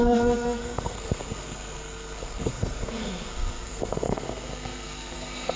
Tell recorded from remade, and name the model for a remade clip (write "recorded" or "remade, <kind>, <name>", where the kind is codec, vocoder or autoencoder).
remade, codec, SNAC